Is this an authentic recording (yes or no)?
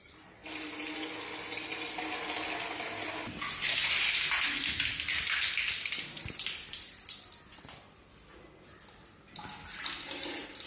yes